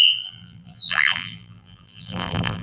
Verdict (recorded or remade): remade